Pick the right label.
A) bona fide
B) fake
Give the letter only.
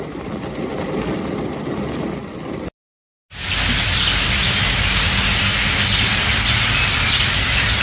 A